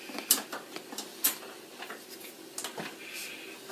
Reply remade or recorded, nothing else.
recorded